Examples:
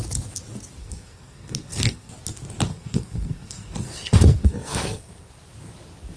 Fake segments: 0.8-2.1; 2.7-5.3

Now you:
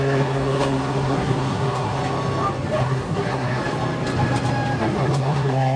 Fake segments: 0.0-2.0; 2.8-3.6; 4.8-5.8

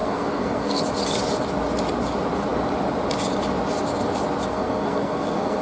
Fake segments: 0.0-0.8; 4.5-5.6

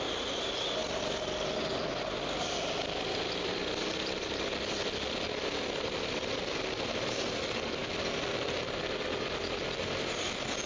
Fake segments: none

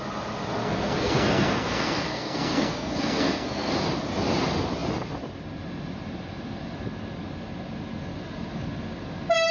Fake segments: 0.6-3.7

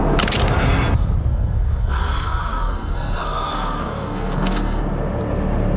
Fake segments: 1.3-4.8

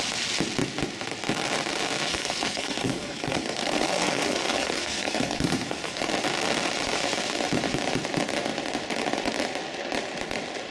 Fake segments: 2.1-6.1